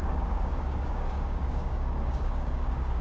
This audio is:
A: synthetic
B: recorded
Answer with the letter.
A